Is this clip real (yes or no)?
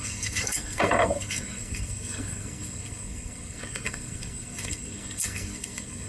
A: no